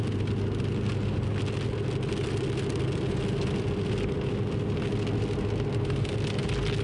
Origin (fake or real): real